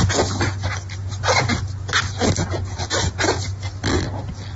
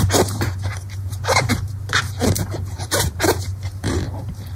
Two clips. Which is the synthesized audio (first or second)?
second